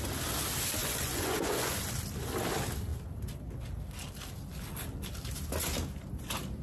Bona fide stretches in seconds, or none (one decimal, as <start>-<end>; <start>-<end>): 0.0-0.8; 1.8-6.6